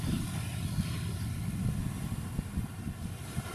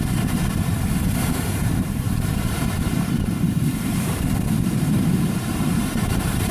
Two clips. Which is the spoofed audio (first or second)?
second